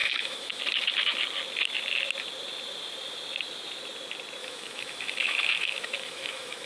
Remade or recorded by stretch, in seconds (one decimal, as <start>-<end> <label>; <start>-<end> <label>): 0.0-0.6 remade; 0.6-4.4 recorded; 4.4-6.7 remade